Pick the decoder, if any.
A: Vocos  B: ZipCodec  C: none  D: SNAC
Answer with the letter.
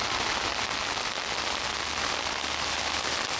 C